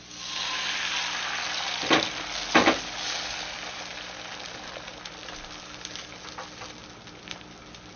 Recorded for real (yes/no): yes